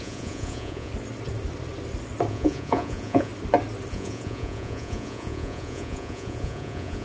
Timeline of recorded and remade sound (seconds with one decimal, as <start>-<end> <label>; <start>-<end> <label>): 0.0-0.9 remade; 0.9-2.3 recorded; 2.3-3.3 remade; 3.3-3.9 recorded; 3.9-7.0 remade